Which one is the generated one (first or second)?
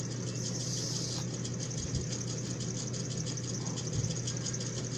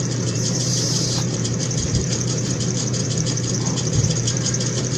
second